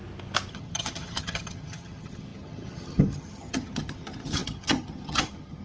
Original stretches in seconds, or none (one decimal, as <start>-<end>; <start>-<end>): 0.0-0.5